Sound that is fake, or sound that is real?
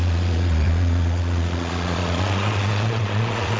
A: fake